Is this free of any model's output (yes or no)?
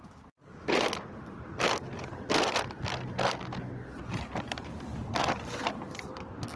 yes